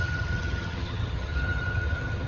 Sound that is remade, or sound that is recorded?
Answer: remade